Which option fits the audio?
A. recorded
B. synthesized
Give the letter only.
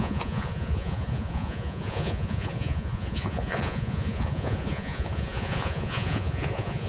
B